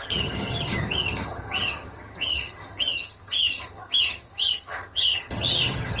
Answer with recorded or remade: remade